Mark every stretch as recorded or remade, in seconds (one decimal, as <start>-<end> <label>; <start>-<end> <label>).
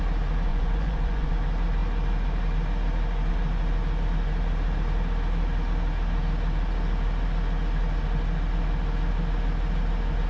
0.0-0.5 recorded; 0.5-1.3 remade; 1.3-10.3 recorded